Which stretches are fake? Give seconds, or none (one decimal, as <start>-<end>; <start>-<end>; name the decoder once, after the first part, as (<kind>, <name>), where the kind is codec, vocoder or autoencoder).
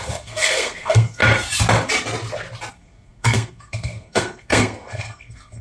0.0-1.2 (codec, SNAC); 2.7-5.6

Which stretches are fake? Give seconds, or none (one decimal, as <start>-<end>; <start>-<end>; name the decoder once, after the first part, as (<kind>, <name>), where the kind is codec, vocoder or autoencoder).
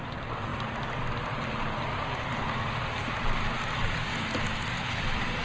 none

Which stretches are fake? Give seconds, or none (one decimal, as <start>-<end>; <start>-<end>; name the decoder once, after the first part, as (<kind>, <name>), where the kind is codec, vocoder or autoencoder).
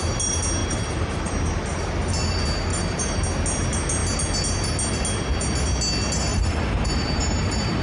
0.6-1.3 (vocoder, BigVGAN v2); 2.7-3.2; 6.3-7.8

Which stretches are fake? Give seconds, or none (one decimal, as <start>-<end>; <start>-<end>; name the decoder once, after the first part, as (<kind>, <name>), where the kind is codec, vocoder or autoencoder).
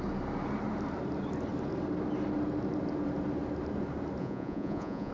4.2-5.1 (vocoder, Vocos)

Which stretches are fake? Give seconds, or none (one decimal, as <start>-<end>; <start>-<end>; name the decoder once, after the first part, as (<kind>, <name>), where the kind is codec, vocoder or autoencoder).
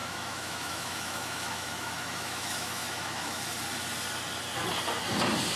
0.0-3.4 (autoencoder, DAC-VAE)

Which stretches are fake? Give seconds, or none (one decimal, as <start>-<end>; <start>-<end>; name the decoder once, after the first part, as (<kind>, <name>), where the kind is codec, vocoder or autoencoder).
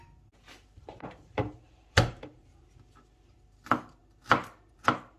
0.0-2.7 (vocoder, BigVGAN v2)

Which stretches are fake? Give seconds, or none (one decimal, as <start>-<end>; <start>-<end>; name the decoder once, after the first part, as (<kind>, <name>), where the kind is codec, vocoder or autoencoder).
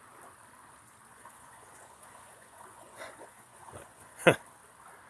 1.1-4.2 (vocoder, Vocos)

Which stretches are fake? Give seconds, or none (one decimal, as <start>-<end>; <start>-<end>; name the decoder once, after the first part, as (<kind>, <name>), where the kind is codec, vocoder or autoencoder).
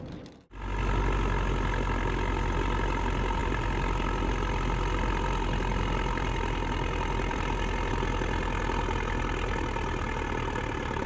3.4-7.9 (vocoder, BigVGAN v2)